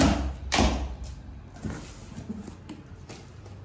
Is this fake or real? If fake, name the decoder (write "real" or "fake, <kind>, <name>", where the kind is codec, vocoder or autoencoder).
real